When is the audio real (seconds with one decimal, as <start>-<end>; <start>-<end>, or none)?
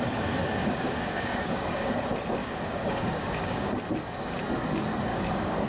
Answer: 0.0-0.6; 1.9-2.4; 3.8-5.1